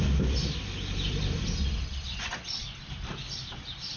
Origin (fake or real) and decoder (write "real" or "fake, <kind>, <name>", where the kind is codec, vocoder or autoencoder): fake, vocoder, BigVGAN v2